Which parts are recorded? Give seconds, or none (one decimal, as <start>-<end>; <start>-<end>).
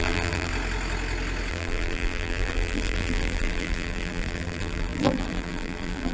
0.5-1.5